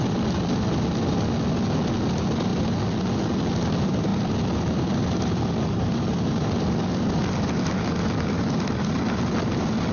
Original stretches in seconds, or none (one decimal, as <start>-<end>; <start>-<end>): 0.0-9.9